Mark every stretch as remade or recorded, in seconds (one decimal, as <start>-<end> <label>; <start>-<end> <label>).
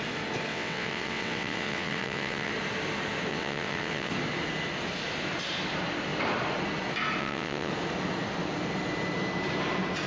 0.0-0.5 recorded; 0.5-2.5 remade; 2.5-3.3 recorded; 3.3-4.1 remade; 4.1-7.2 recorded; 7.2-7.7 remade; 7.7-10.1 recorded